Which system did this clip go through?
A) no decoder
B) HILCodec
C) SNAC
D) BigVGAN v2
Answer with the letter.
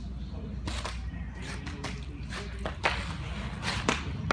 A